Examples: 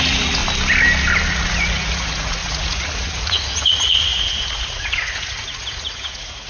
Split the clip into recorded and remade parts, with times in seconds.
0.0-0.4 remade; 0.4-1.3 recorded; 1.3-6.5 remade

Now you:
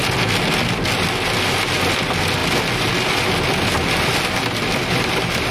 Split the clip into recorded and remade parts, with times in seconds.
0.0-5.5 recorded

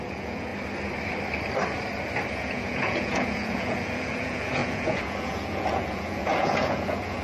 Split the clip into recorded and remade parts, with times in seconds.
0.0-0.5 remade; 0.5-2.3 recorded; 2.3-7.2 remade

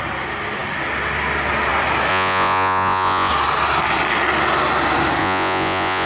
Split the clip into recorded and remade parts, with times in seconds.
0.0-2.1 recorded; 2.1-3.3 remade; 3.3-5.2 recorded; 5.2-6.1 remade

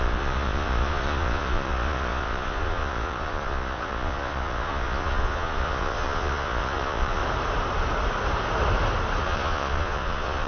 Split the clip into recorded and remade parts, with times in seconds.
0.0-7.2 remade; 7.2-9.2 recorded; 9.2-10.5 remade

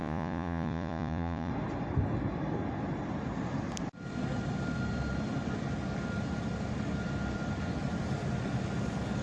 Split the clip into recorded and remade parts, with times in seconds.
0.0-1.5 remade; 1.5-9.2 recorded

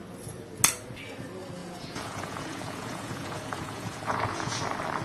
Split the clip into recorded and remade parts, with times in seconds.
0.0-1.6 recorded; 1.6-4.6 remade; 4.6-5.0 recorded

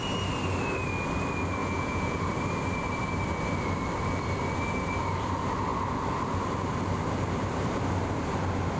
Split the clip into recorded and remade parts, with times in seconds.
0.0-1.6 recorded; 1.6-2.2 remade; 2.2-8.8 recorded